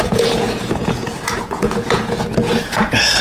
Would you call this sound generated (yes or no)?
yes